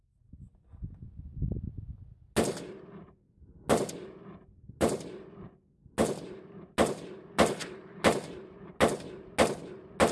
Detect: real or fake real